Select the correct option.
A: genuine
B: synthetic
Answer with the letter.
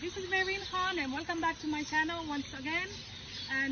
A